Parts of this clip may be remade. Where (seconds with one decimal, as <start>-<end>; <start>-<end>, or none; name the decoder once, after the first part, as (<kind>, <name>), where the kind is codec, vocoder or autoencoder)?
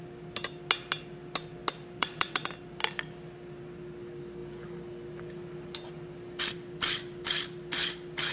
2.0-2.5 (vocoder, WaveNeXt)